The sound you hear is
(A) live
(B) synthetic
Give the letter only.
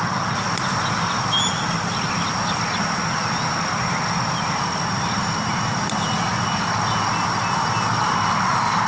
A